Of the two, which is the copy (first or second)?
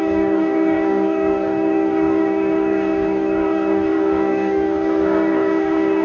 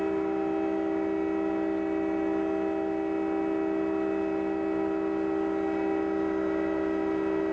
first